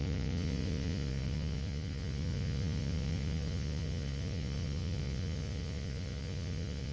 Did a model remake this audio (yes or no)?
yes